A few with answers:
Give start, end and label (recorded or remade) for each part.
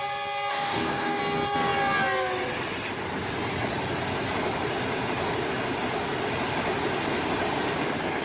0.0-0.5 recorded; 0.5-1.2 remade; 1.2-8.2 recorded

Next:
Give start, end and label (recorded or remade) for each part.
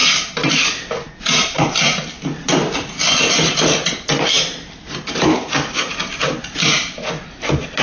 0.0-5.3 recorded; 5.3-5.9 remade; 5.9-7.8 recorded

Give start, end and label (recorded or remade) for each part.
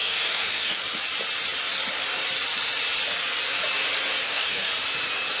0.0-0.8 remade; 0.8-4.2 recorded; 4.2-4.7 remade; 4.7-5.4 recorded